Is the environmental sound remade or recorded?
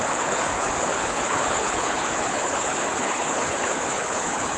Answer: remade